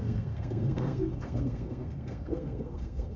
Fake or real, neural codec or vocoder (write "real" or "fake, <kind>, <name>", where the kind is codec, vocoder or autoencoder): fake, codec, SNAC